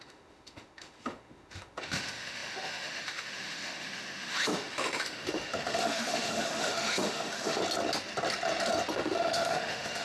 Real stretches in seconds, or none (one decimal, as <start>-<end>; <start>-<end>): 7.6-8.9